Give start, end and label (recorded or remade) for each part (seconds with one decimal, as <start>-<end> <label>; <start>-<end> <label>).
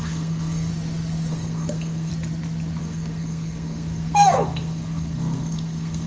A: 0.0-0.7 remade; 0.7-1.3 recorded; 1.3-2.1 remade; 2.1-2.8 recorded; 2.8-6.1 remade